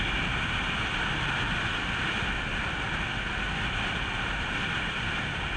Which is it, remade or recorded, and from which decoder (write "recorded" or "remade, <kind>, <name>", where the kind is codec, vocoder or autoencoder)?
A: recorded